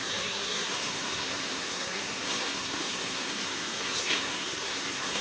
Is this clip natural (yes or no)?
no